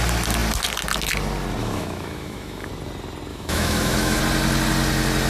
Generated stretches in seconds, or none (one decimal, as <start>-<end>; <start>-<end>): 1.6-2.7; 3.3-4.2